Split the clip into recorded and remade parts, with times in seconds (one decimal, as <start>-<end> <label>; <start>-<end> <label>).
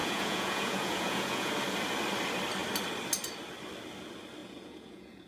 0.0-1.5 remade; 1.5-4.4 recorded; 4.4-5.3 remade